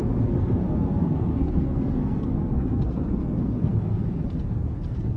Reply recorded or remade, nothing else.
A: remade